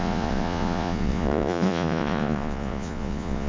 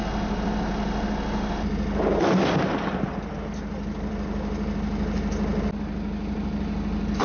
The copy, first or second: first